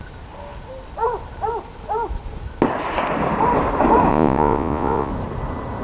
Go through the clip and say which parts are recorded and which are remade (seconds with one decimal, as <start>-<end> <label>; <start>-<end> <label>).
0.0-4.1 recorded; 4.1-5.1 remade; 5.1-5.8 recorded